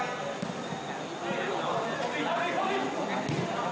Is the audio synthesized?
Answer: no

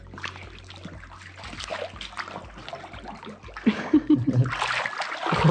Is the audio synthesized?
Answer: no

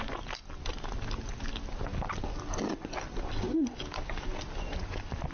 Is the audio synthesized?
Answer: no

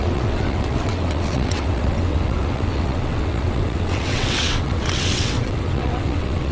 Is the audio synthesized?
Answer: yes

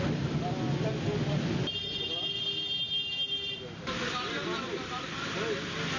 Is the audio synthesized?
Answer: no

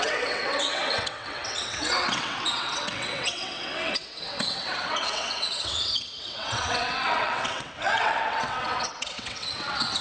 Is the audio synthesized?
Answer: yes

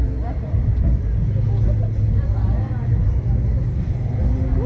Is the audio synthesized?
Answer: no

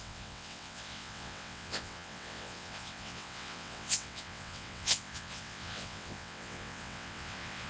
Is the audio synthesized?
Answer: yes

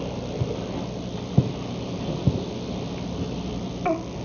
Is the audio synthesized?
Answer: no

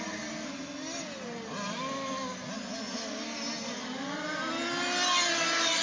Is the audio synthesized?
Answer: no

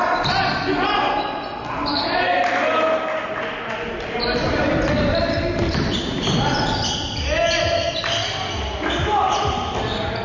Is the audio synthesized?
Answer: no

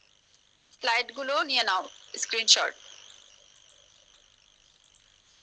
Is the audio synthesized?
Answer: no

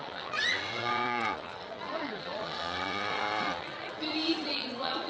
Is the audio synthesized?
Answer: yes